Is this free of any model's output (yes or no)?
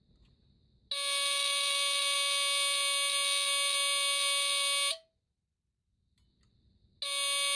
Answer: yes